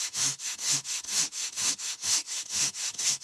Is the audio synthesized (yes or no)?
yes